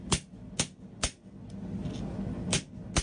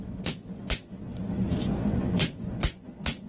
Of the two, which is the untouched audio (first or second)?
first